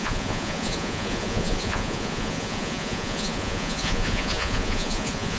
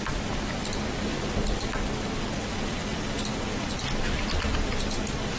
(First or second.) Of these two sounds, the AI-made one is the first